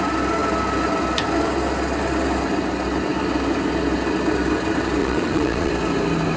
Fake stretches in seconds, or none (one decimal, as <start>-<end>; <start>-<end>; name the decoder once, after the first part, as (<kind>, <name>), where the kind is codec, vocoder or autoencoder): 5.0-5.7 (vocoder, Vocos)